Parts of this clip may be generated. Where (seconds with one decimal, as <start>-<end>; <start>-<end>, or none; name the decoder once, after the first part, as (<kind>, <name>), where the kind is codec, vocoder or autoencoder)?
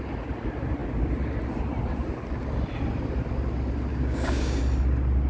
3.9-4.6 (codec, DAC)